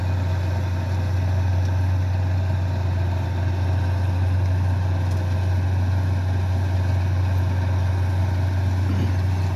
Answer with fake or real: real